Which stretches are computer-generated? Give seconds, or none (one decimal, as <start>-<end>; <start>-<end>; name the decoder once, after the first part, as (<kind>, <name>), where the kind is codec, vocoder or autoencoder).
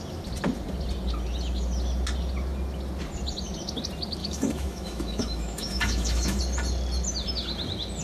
4.2-6.4 (autoencoder, DAC-VAE)